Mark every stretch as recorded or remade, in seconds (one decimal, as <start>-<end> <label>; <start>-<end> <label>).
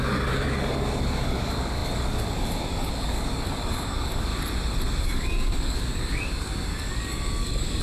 0.0-4.3 remade; 4.3-5.0 recorded; 5.0-7.8 remade